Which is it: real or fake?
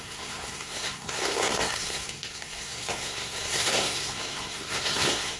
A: fake